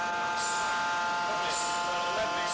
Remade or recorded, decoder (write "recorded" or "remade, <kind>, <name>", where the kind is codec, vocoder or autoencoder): recorded